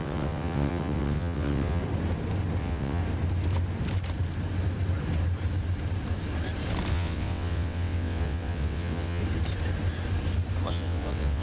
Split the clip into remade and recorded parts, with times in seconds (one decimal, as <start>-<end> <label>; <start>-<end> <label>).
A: 0.0-1.8 remade; 1.8-2.6 recorded; 2.6-3.0 remade; 3.0-6.9 recorded; 6.9-9.2 remade; 9.2-10.7 recorded; 10.7-11.4 remade